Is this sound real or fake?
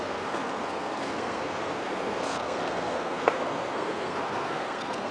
fake